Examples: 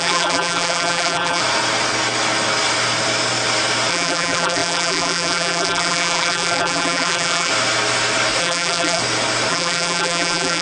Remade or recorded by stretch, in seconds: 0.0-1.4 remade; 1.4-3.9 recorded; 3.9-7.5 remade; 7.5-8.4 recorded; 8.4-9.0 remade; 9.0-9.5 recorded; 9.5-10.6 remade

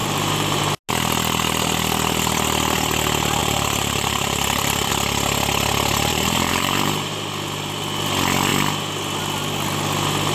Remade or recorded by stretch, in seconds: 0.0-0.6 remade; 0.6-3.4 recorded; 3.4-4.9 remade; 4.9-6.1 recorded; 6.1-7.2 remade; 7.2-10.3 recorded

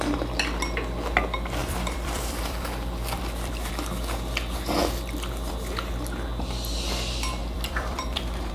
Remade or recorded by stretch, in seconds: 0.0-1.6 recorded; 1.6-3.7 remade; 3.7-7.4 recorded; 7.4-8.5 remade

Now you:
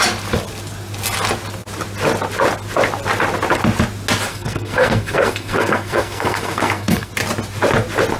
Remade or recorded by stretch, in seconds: 0.0-4.3 recorded; 4.3-7.1 remade; 7.1-8.2 recorded

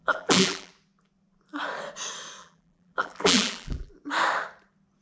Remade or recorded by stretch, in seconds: 0.0-0.7 remade; 0.7-2.4 recorded; 2.4-3.9 remade; 3.9-5.0 recorded

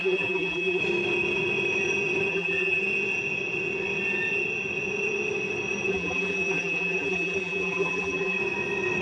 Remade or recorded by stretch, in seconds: 0.0-0.8 remade; 0.8-2.3 recorded; 2.3-2.8 remade; 2.8-5.9 recorded; 5.9-8.4 remade; 8.4-9.0 recorded